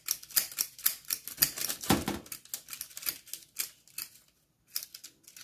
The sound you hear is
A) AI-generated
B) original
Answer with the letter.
B